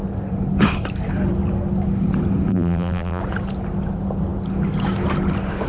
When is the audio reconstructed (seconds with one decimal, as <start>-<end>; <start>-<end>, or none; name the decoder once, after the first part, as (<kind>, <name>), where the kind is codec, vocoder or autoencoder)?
2.5-3.2 (vocoder, BigVGAN v2)